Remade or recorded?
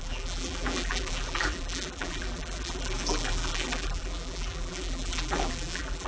remade